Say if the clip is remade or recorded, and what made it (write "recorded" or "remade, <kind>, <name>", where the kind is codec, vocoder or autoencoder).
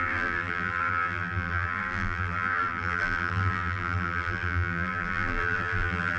remade, vocoder, BigVGAN v2